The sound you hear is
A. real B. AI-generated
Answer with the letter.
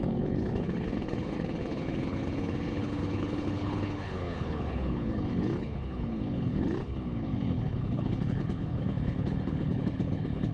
B